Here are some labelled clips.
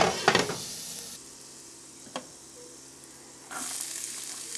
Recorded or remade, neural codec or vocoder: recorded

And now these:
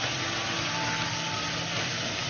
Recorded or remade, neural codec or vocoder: recorded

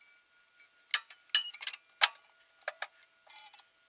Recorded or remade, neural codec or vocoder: recorded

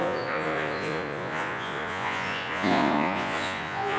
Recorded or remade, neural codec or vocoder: remade, vocoder, Vocos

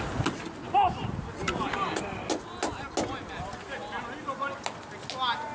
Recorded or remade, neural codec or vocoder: recorded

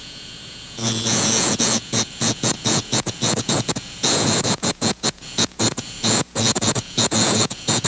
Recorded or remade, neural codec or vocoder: remade, vocoder, Vocos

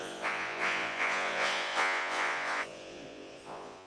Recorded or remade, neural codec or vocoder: remade, vocoder, Vocos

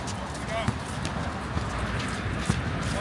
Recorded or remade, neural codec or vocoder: recorded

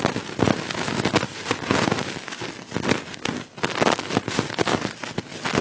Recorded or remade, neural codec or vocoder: recorded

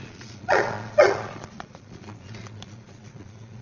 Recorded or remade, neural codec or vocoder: remade, vocoder, Vocos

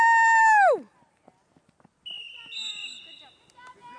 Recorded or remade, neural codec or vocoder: recorded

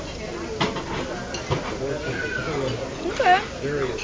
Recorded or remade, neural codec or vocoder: recorded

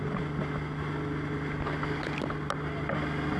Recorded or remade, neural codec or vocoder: recorded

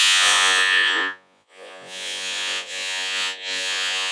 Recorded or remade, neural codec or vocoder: remade, vocoder, Vocos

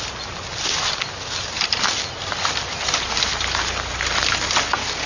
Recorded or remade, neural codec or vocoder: recorded